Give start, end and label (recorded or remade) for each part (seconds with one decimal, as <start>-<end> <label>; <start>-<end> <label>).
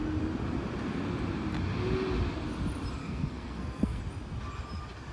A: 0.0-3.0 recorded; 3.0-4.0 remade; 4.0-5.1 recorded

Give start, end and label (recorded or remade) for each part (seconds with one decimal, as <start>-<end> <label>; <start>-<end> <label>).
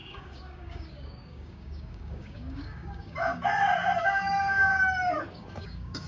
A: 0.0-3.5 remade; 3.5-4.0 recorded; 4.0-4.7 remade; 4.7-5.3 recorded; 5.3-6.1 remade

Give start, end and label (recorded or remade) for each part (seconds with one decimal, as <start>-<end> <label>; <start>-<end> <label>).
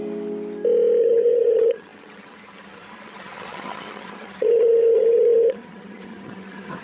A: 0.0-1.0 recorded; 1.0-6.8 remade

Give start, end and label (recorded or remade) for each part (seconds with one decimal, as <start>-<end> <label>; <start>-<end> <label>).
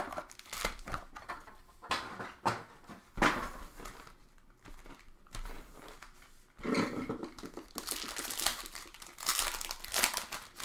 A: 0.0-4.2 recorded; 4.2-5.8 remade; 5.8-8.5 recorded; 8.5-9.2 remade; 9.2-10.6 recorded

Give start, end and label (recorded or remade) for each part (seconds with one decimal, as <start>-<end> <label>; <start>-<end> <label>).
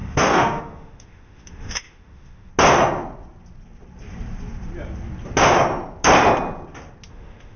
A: 0.0-2.5 remade; 2.5-7.1 recorded; 7.1-7.6 remade